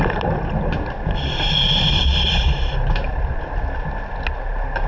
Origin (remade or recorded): recorded